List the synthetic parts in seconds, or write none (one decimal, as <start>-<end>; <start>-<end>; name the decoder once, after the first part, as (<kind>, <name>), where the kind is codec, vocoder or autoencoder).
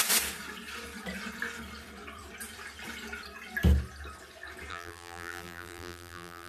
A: 4.7-6.5 (vocoder, BigVGAN v2)